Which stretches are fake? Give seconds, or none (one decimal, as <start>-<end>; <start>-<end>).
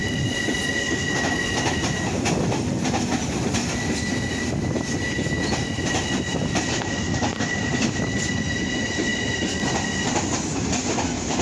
0.0-1.2; 6.3-8.3; 9.1-10.7